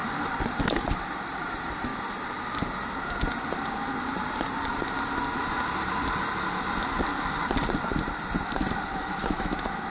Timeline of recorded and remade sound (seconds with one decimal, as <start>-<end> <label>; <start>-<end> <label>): 0.0-9.0 recorded; 9.0-9.5 remade; 9.5-9.9 recorded